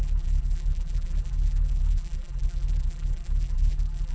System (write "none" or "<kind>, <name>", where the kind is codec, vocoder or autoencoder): vocoder, BigVGAN v2